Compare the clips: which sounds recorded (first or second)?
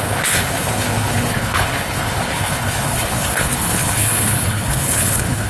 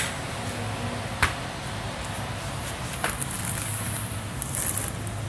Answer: second